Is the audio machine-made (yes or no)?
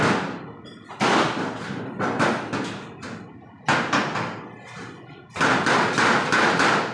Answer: no